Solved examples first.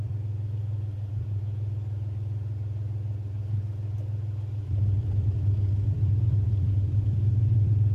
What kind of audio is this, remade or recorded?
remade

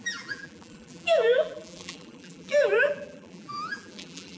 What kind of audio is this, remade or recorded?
remade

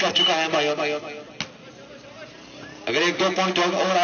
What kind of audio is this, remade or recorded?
recorded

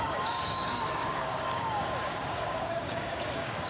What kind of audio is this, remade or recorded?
remade